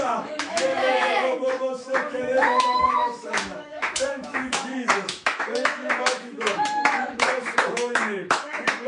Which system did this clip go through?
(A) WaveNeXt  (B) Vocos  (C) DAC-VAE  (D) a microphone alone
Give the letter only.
C